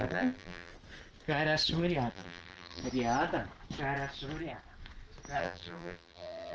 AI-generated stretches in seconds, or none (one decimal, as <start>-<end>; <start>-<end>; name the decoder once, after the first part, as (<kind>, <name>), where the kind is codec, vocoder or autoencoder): 0.0-0.7 (vocoder, BigVGAN v2); 2.1-2.8; 5.4-6.5